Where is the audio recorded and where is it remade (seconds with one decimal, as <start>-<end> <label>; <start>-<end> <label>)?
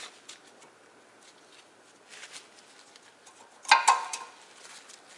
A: 0.0-5.2 recorded